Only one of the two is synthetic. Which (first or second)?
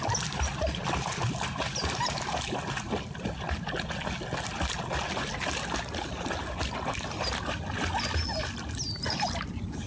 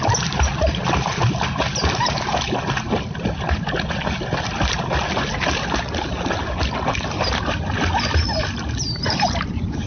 second